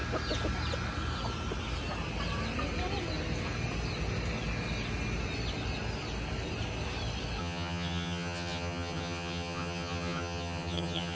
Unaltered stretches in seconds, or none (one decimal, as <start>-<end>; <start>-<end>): 0.0-7.4